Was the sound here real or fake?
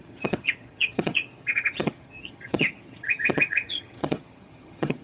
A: fake